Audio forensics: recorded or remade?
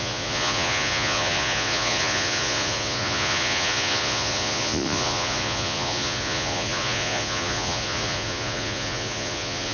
remade